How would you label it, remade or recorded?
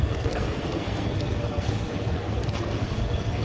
remade